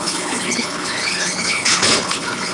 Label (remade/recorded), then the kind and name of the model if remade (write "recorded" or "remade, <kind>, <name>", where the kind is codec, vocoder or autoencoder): remade, codec, HILCodec